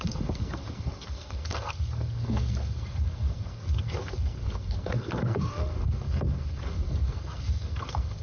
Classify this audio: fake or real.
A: fake